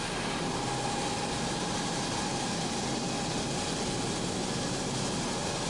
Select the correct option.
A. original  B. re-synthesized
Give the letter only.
A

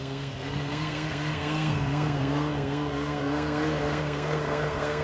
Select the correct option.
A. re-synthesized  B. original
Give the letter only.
A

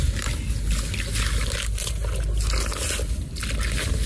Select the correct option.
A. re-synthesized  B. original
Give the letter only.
B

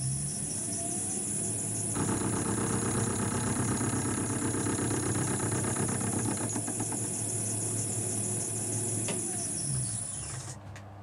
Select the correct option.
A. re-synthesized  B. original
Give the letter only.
B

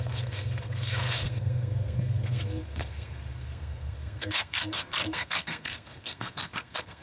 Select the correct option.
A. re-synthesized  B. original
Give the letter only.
A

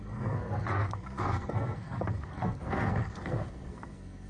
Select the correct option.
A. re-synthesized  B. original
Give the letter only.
A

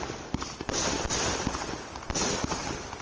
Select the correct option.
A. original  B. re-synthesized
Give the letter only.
A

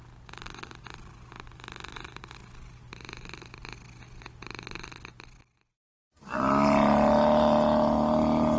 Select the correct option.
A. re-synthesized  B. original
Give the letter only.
B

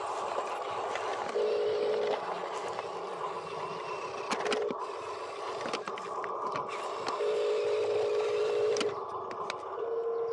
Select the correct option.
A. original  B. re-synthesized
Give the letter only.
A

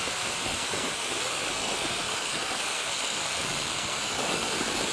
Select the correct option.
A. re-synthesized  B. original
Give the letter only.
A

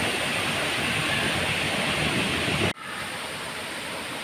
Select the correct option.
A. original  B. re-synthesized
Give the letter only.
A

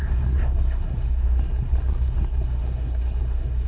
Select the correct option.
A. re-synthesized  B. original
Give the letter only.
A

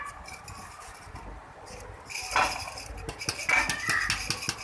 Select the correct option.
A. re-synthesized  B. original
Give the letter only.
B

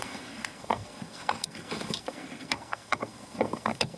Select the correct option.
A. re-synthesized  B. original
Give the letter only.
A